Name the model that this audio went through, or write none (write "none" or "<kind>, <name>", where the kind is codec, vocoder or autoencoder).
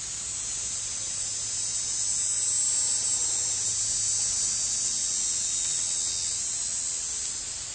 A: none